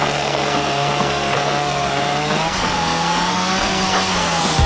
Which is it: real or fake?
fake